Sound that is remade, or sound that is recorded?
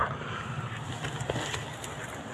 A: recorded